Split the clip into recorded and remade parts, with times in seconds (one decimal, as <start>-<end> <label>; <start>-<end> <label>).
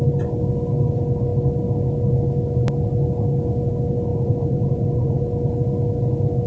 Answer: 0.0-4.1 recorded; 4.1-5.2 remade; 5.2-6.5 recorded